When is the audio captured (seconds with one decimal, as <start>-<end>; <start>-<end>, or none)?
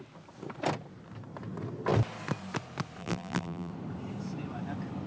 0.0-3.0; 3.7-5.1